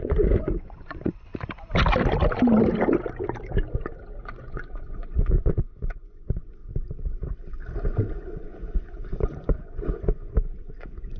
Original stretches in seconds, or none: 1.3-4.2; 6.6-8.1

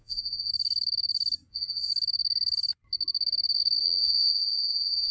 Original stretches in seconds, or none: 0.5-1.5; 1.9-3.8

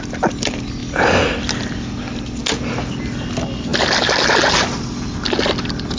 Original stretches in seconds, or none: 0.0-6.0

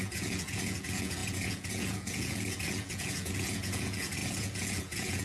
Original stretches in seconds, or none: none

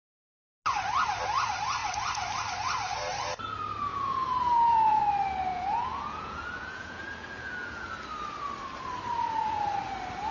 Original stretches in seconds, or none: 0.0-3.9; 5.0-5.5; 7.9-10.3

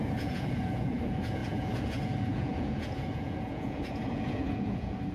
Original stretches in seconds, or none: none

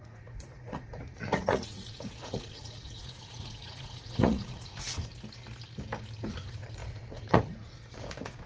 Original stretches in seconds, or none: 5.0-6.3